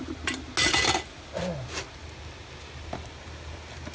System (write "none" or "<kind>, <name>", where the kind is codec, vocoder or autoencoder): none